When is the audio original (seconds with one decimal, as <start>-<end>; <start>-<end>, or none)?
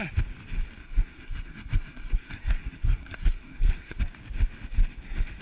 0.0-0.8; 4.0-5.4